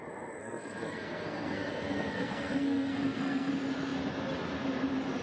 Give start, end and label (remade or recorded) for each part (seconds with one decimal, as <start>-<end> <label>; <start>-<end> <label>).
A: 0.0-0.4 recorded; 0.4-3.5 remade; 3.5-5.2 recorded